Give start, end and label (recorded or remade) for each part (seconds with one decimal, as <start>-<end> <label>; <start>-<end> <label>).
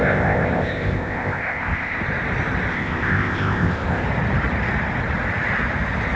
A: 0.0-2.0 remade; 2.0-2.7 recorded; 2.7-4.0 remade; 4.0-6.2 recorded